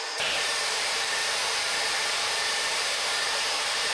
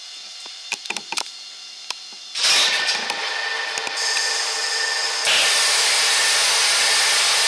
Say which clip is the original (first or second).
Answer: second